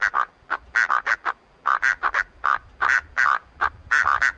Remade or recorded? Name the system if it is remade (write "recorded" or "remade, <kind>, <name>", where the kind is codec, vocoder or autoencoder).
remade, vocoder, BigVGAN v2